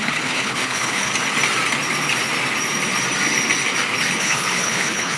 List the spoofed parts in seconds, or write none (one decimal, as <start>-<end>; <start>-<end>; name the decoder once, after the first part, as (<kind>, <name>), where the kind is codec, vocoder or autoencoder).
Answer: 0.0-1.1 (codec, HILCodec); 4.2-5.2